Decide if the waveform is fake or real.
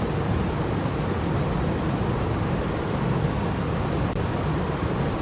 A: real